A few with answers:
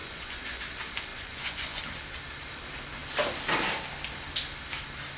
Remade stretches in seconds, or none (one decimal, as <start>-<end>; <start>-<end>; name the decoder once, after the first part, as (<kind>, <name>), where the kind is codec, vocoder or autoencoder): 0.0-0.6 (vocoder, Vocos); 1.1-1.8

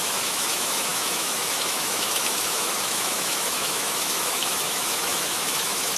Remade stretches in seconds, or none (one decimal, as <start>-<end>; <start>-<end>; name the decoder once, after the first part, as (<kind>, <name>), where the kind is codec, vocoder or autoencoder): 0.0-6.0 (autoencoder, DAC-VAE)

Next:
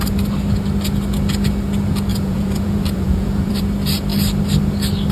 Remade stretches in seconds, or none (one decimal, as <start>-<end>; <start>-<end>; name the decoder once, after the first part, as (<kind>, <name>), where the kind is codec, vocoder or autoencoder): 2.1-3.5 (vocoder, Vocos)

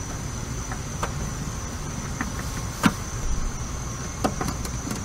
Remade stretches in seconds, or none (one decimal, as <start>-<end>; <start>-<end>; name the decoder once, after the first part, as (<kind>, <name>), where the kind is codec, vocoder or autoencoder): none

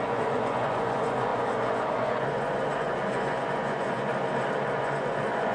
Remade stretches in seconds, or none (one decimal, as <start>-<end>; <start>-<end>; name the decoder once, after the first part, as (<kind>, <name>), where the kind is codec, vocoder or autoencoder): 0.0-4.1 (vocoder, Vocos); 4.8-5.5

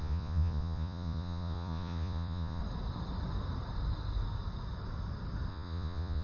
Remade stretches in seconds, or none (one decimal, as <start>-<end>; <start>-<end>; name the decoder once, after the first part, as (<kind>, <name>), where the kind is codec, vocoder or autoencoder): 0.0-2.6 (vocoder, Vocos); 5.5-6.2

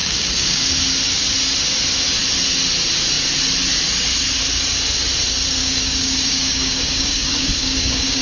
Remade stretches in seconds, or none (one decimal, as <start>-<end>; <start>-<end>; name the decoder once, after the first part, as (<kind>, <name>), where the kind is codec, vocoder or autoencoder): 0.0-0.7 (codec, DAC); 5.6-8.2

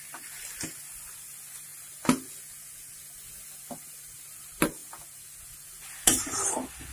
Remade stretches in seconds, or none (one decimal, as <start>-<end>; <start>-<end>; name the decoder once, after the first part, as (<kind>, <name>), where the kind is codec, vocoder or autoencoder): none